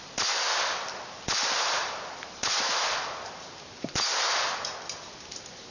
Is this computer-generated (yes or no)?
no